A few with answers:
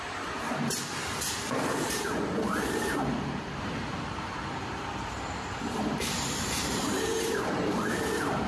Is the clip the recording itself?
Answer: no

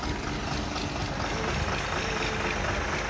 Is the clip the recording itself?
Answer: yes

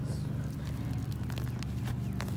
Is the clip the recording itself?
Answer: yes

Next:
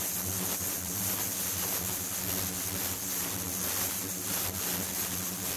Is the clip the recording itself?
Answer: yes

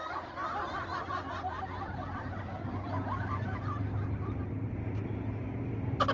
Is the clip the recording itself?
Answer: no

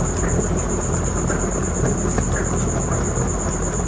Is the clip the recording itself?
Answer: yes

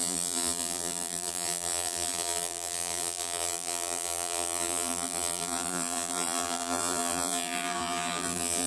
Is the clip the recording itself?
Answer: no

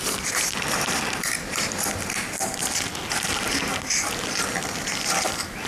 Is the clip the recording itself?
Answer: yes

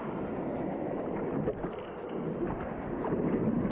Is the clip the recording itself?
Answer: yes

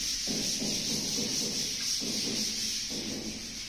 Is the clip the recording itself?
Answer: yes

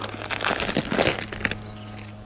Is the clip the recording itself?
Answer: yes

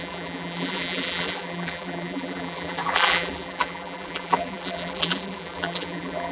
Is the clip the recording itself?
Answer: no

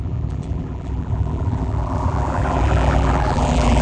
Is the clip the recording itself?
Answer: no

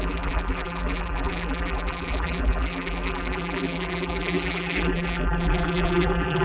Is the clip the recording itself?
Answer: no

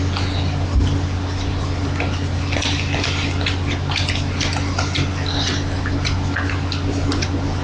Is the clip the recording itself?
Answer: yes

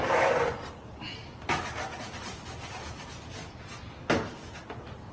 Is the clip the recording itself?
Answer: yes